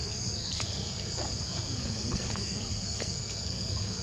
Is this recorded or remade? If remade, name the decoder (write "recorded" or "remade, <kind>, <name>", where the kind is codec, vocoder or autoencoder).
remade, codec, SNAC